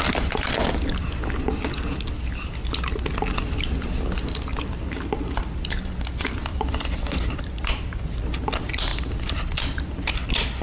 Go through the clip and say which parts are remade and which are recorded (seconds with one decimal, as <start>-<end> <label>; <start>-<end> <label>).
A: 0.0-4.5 recorded; 4.5-5.9 remade; 5.9-6.5 recorded; 6.5-8.2 remade; 8.2-8.9 recorded; 8.9-10.1 remade; 10.1-10.6 recorded